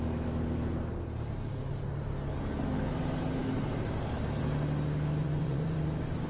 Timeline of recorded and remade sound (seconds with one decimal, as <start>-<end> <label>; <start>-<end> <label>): 0.0-5.2 recorded; 5.2-5.8 remade; 5.8-6.3 recorded